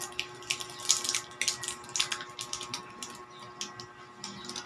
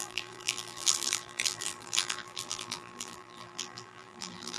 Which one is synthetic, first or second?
second